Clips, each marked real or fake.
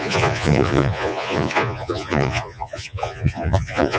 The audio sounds fake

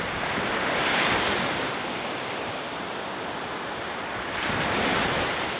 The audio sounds real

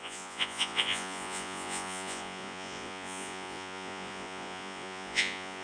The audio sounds fake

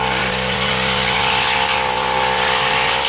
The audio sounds real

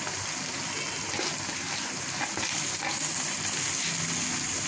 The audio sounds real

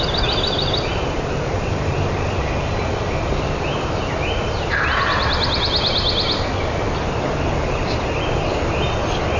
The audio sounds real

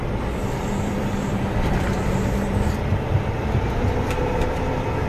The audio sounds fake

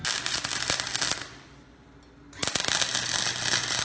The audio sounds real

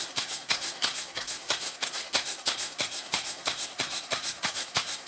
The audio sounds fake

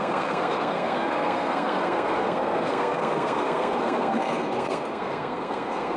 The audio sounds fake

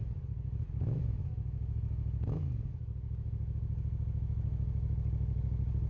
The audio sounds fake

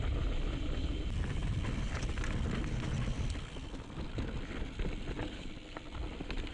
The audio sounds real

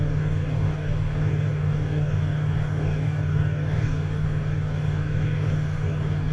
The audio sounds fake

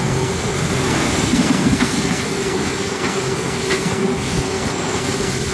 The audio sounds fake